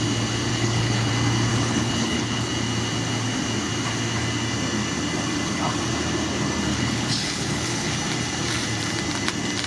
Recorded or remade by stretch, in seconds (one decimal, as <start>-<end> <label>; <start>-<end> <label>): 0.0-0.5 recorded; 0.5-1.1 remade; 1.1-1.5 recorded; 1.5-2.5 remade; 2.5-6.7 recorded; 6.7-8.0 remade; 8.0-9.7 recorded